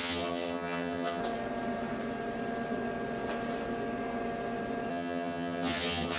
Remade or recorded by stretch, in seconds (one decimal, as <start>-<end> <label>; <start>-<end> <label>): 0.0-1.2 remade; 1.2-4.9 recorded; 4.9-6.2 remade